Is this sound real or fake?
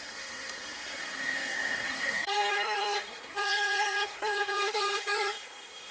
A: fake